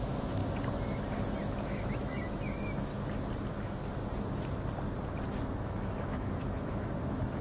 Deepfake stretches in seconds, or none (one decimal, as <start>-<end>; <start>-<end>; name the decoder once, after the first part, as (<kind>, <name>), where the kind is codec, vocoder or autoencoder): 0.0-0.4 (autoencoder, DAC-VAE); 1.4-2.9; 3.5-3.9; 5.6-7.4